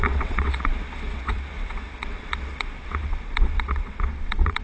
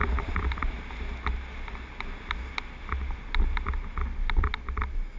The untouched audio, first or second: second